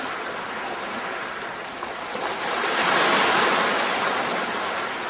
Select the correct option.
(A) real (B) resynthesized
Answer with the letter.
A